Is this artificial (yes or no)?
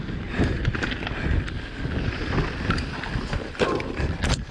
no